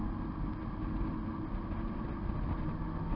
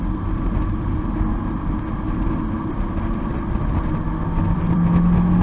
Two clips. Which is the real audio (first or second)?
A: first